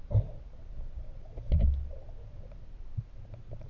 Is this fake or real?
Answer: real